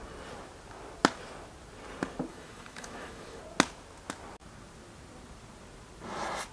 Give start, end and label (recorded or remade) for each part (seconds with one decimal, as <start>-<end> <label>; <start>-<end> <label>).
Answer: 0.0-2.3 recorded; 2.3-3.4 remade; 3.4-6.5 recorded